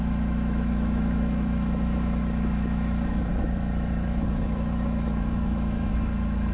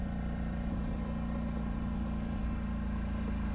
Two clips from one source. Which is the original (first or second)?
second